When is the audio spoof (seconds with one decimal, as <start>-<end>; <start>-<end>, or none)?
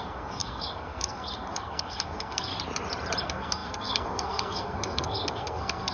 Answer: 0.0-2.5; 3.2-5.9